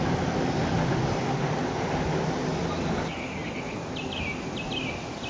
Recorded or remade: recorded